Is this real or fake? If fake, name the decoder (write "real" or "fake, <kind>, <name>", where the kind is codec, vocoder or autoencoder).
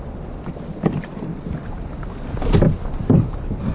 real